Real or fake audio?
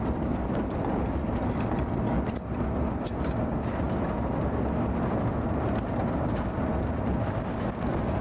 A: real